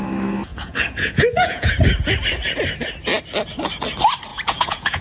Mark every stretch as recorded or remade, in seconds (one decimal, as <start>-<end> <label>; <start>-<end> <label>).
0.0-0.5 recorded; 0.5-1.7 remade; 1.7-4.3 recorded; 4.3-5.0 remade